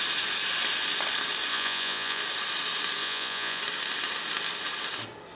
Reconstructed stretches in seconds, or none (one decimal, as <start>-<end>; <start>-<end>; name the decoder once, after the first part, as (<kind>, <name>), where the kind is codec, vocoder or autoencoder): 1.5-2.2 (vocoder, Vocos); 3.0-3.6